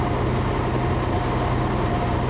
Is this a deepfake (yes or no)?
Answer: no